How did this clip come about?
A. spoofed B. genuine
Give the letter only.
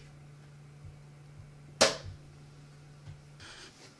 B